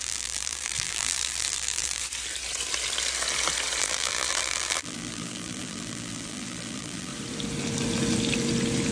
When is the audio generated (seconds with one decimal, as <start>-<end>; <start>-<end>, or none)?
0.0-2.0; 3.8-7.1